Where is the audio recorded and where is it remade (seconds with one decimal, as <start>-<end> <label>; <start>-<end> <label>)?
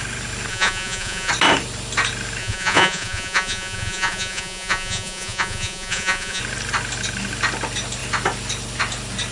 0.0-0.5 recorded; 0.5-1.3 remade; 1.3-2.4 recorded; 2.4-6.4 remade; 6.4-9.3 recorded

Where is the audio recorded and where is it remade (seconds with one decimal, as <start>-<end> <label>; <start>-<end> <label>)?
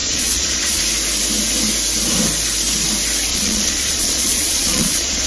0.0-0.8 remade; 0.8-3.3 recorded; 3.3-5.3 remade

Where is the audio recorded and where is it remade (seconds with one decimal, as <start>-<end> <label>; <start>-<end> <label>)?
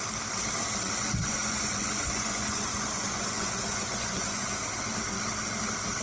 0.0-1.0 recorded; 1.0-4.6 remade; 4.6-6.0 recorded